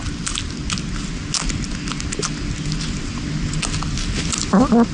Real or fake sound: real